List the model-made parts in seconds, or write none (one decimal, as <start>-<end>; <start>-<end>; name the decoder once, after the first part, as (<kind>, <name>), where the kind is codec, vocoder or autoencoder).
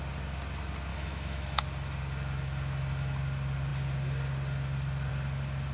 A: 0.9-1.6 (autoencoder, DAC-VAE)